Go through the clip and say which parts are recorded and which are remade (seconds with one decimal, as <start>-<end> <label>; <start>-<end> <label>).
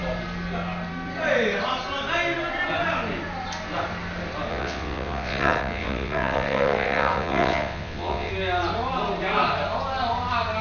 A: 0.0-4.5 recorded; 4.5-8.3 remade; 8.3-10.6 recorded